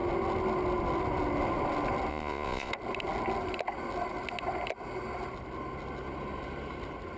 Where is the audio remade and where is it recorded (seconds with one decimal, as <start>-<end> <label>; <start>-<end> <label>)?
0.0-2.1 recorded; 2.1-2.7 remade; 2.7-7.2 recorded